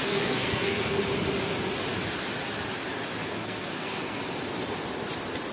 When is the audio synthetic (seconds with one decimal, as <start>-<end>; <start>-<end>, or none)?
0.0-1.0; 3.2-4.2